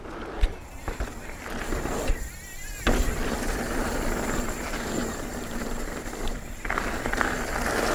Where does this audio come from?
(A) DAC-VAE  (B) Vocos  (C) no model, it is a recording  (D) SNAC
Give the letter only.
C